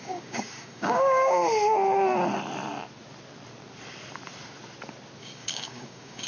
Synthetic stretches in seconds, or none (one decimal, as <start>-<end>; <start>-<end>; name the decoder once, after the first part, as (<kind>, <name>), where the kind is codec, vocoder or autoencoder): 0.0-1.4 (codec, DAC); 5.2-6.3